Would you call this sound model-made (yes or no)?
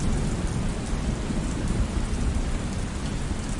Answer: yes